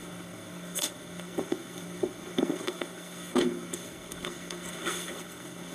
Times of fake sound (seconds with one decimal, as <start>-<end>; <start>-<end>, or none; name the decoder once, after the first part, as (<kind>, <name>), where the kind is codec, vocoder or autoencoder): 0.0-5.7 (codec, SNAC)